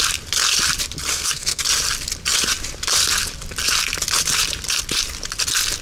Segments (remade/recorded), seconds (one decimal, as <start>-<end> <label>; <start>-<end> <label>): 0.0-1.1 recorded; 1.1-1.6 remade; 1.6-5.8 recorded